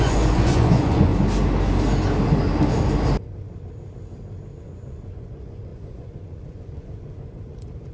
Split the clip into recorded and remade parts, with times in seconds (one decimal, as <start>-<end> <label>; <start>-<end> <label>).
0.0-1.1 remade; 1.1-4.6 recorded; 4.6-7.9 remade